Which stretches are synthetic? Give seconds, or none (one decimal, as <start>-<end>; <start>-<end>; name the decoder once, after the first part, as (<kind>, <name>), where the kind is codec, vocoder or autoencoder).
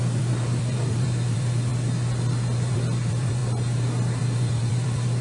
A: 0.0-1.7 (vocoder, BigVGAN v2); 2.7-3.4; 4.2-5.2